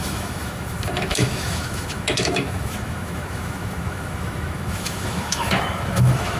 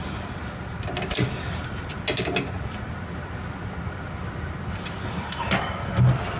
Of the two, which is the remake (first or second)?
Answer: first